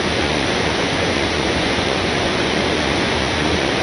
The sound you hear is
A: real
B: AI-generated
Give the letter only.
B